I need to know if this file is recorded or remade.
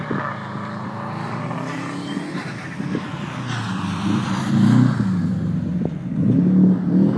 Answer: recorded